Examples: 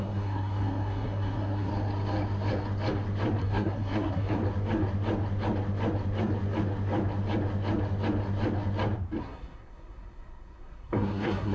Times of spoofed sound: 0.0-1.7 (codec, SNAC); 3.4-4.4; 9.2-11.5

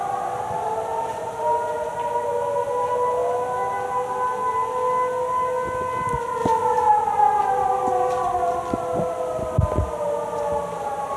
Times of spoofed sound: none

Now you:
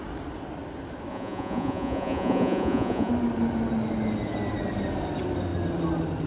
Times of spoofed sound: 1.1-3.1 (vocoder, Vocos)

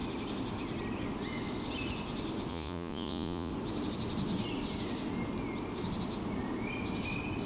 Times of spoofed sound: 2.5-3.5 (vocoder, Vocos)

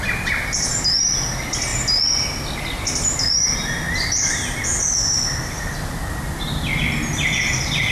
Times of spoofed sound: none